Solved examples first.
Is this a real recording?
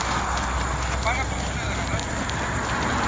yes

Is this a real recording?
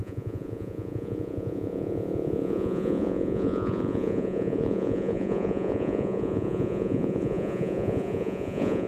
no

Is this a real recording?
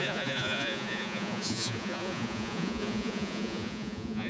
no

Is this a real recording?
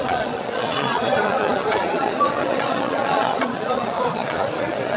no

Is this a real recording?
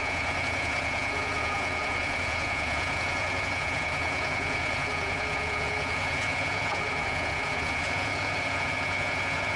no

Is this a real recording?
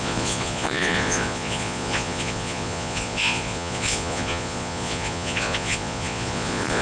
no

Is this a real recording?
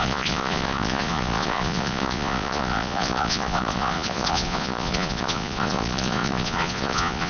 no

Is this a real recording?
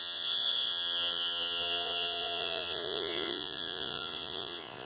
no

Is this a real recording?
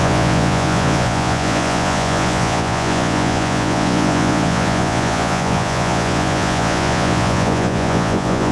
no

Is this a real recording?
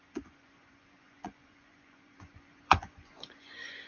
no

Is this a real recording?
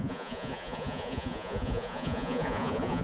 no